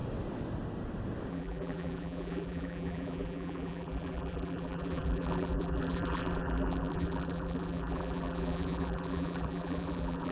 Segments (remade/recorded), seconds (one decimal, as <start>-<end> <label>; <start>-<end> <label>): 0.0-1.3 recorded; 1.3-10.3 remade